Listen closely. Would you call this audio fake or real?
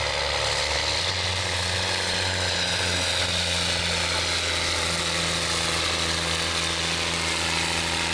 real